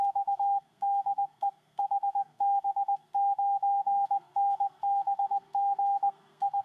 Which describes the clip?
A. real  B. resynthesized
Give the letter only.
B